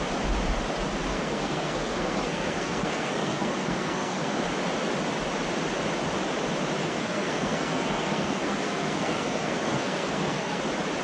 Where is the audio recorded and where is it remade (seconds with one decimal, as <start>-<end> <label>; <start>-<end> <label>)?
0.0-1.1 recorded; 1.1-4.4 remade; 4.4-6.8 recorded; 6.8-10.6 remade; 10.6-11.0 recorded